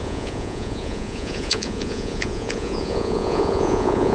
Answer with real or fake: fake